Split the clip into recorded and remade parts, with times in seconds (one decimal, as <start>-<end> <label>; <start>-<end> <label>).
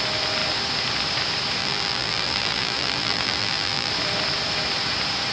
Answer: 0.0-1.6 recorded; 1.6-3.9 remade; 3.9-5.3 recorded